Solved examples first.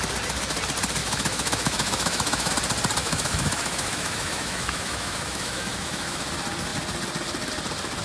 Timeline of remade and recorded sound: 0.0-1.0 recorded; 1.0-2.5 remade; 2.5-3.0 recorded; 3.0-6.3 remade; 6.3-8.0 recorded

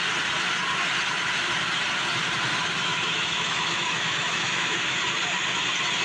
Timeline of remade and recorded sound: 0.0-2.9 recorded; 2.9-5.0 remade; 5.0-6.0 recorded